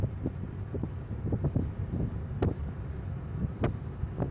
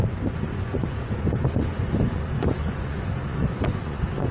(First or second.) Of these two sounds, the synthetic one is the second